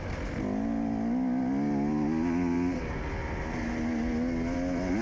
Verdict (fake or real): real